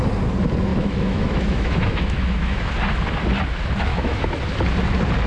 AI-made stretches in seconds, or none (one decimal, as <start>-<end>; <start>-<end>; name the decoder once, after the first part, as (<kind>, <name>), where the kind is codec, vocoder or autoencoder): 0.7-2.7 (autoencoder, DAC-VAE); 3.9-4.4